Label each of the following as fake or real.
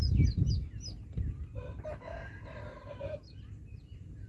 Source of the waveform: real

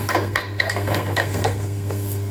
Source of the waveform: fake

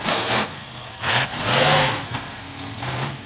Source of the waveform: fake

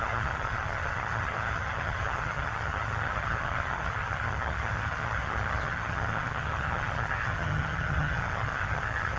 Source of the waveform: fake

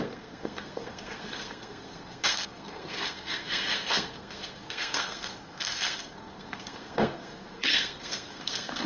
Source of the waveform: fake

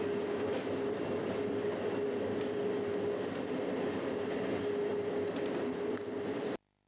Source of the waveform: real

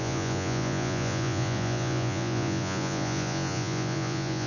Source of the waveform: fake